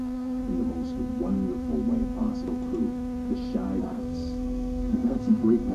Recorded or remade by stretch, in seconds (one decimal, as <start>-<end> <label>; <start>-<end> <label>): 0.0-0.4 remade; 0.4-3.8 recorded; 3.8-5.7 remade

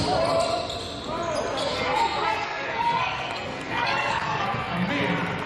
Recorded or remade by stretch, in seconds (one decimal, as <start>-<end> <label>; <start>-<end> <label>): 0.0-1.6 recorded; 1.6-4.9 remade; 4.9-5.5 recorded

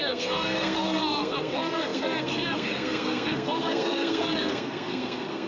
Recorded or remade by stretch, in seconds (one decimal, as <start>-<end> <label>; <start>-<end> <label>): 0.0-5.5 remade

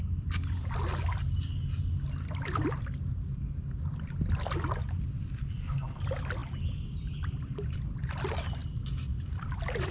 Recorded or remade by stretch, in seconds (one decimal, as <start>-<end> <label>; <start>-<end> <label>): 0.0-5.4 recorded; 5.4-6.0 remade; 6.0-9.9 recorded

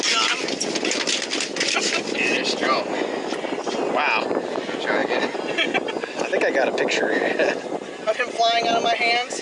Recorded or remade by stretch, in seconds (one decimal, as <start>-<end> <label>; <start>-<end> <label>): 0.0-9.4 recorded